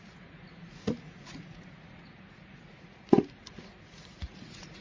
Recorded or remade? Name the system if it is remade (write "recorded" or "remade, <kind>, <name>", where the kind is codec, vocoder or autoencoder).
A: remade, vocoder, Vocos